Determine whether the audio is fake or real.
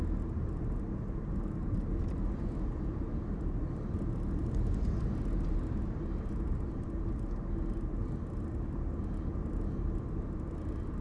real